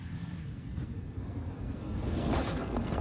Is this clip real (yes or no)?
no